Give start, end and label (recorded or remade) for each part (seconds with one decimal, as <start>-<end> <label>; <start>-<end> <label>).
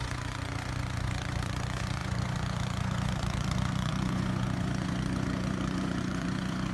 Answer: 0.0-6.7 remade